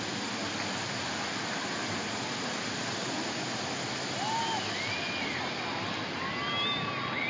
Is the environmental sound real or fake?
real